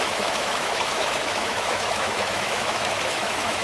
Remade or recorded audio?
remade